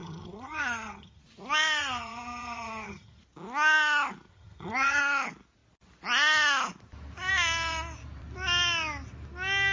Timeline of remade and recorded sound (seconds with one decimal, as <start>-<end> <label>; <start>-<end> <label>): 0.0-1.2 remade; 1.2-1.8 recorded; 1.8-3.2 remade; 3.2-4.3 recorded; 4.3-5.0 remade; 5.0-9.7 recorded

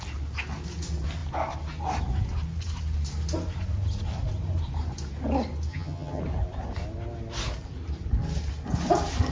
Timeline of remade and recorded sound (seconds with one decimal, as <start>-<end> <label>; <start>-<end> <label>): 0.0-5.7 recorded; 5.7-6.2 remade; 6.2-9.3 recorded

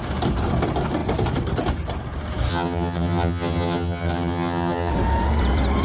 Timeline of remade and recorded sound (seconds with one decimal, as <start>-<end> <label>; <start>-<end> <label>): 0.0-2.5 recorded; 2.5-4.9 remade; 4.9-5.8 recorded

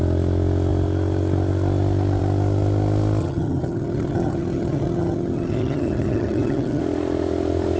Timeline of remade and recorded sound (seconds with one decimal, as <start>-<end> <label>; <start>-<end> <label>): 0.0-3.2 recorded; 3.2-6.8 remade; 6.8-7.8 recorded

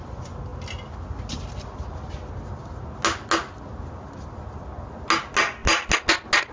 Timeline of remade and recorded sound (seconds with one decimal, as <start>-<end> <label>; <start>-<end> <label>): 0.0-6.5 recorded